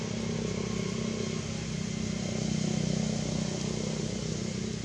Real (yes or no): yes